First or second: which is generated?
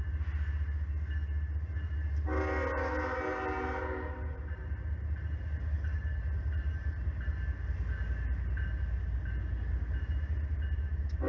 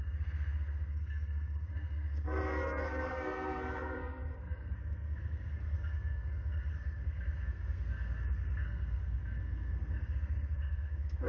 second